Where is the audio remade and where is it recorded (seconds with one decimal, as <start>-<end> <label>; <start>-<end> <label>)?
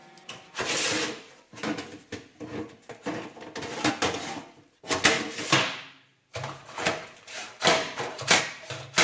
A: 0.0-6.1 recorded; 6.1-8.4 remade; 8.4-9.0 recorded